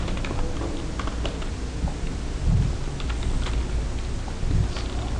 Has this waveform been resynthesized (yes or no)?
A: no